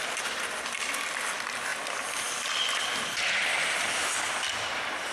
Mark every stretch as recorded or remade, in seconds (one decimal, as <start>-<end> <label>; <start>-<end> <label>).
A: 0.0-5.1 recorded